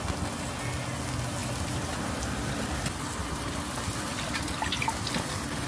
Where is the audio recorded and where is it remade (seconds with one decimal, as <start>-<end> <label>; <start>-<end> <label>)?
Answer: 0.0-1.4 recorded; 1.4-2.8 remade; 2.8-3.2 recorded; 3.2-5.7 remade